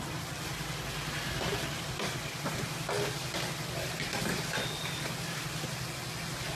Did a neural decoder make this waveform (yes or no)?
no